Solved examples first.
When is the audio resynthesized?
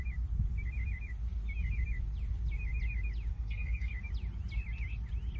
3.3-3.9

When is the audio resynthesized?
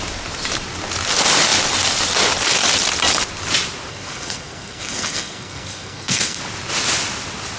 3.9-6.4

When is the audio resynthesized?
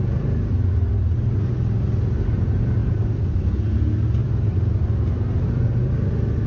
2.8-6.1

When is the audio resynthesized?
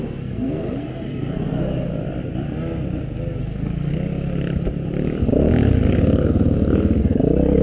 0.0-1.9; 3.4-3.9; 7.0-7.6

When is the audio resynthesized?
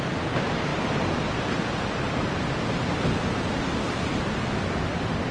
none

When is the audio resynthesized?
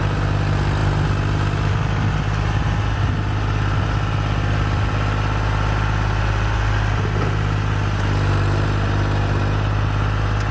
none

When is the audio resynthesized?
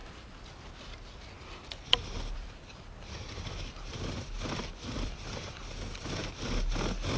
0.0-0.7; 2.0-5.6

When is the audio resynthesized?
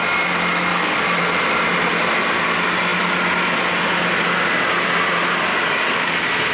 0.7-1.2; 5.5-6.1